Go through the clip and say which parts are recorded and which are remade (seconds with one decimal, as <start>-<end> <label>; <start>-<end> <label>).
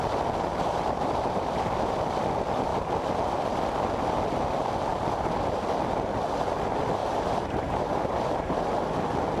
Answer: 0.0-7.0 recorded; 7.0-8.7 remade; 8.7-9.4 recorded